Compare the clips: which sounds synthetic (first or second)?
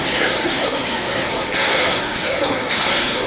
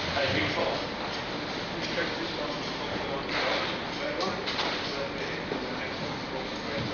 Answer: first